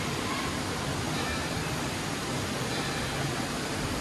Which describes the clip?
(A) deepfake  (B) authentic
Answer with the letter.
A